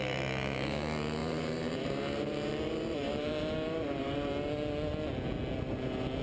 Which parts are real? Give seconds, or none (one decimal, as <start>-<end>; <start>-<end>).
0.0-1.2; 4.3-6.2